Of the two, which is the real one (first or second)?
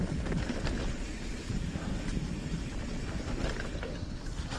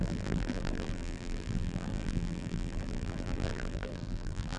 first